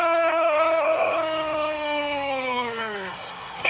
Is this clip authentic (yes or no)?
no